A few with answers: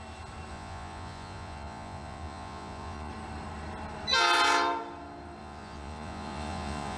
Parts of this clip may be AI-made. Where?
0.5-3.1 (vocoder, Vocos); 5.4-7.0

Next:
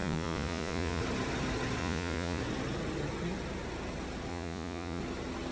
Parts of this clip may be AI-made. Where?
0.0-1.0 (vocoder, Vocos); 1.8-2.4; 4.3-5.0

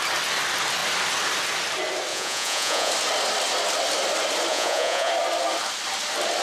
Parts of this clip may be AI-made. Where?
2.1-2.9 (vocoder, Vocos); 4.5-5.1

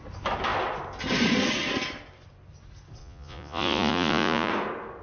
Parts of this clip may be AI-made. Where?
3.0-4.5 (vocoder, Vocos)

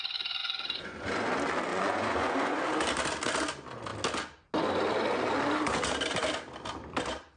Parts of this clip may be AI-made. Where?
0.4-1.1 (vocoder, Vocos); 1.7-2.6

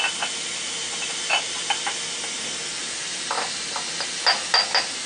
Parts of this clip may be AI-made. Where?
none

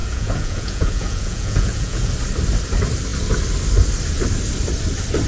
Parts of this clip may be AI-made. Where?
0.0-2.1 (vocoder, Vocos)